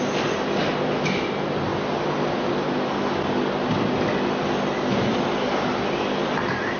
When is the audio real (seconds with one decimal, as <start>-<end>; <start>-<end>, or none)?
0.0-6.8